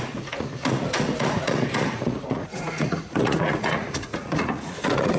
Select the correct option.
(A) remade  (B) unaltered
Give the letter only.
A